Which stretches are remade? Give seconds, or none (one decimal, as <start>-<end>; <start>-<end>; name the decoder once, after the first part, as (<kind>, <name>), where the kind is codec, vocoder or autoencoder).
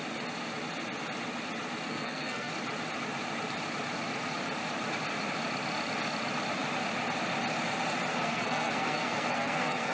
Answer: 1.9-2.5 (codec, SNAC); 8.1-9.9